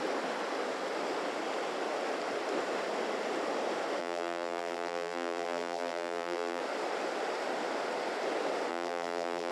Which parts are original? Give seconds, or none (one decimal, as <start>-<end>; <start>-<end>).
0.0-4.0; 6.6-8.7